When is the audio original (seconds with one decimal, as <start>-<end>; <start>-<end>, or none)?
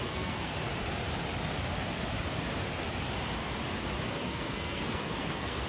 0.7-4.1